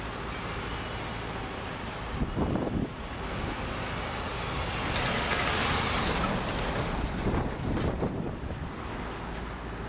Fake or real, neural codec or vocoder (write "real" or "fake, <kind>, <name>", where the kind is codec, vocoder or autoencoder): real